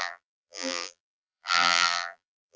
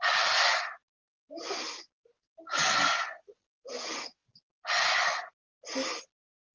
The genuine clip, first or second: second